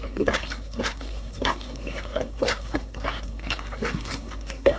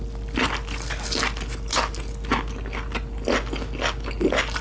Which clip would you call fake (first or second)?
first